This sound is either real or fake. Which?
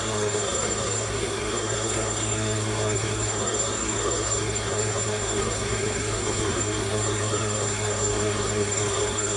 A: fake